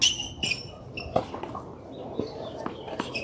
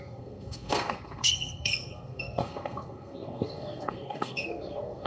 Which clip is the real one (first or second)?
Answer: first